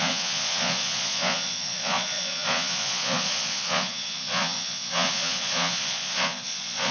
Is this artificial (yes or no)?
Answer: yes